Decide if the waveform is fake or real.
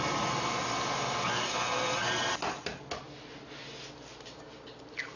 real